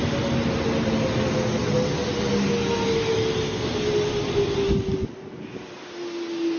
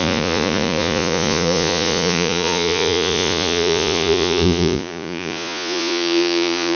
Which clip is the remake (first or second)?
second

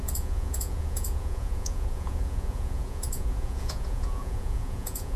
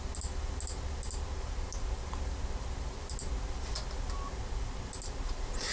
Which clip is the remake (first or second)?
first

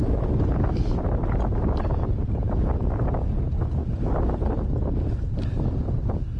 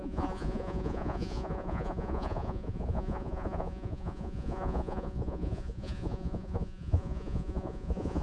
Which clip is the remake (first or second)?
second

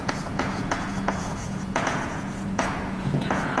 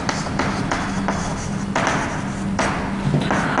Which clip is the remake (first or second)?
first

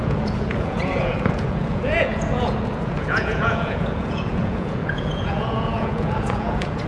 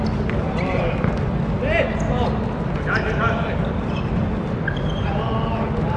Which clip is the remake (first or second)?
first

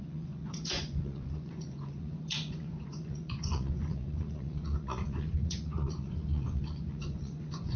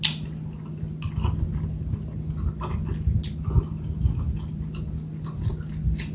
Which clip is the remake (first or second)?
first